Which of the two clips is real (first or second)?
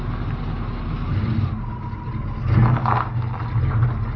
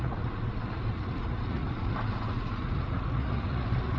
first